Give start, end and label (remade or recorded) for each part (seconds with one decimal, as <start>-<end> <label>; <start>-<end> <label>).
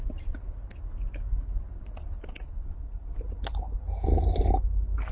0.0-5.1 recorded